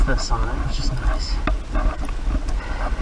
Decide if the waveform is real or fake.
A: real